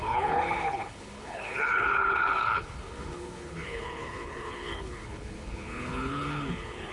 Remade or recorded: remade